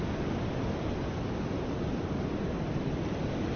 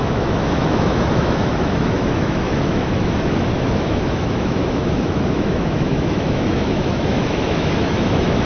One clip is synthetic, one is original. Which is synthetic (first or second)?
second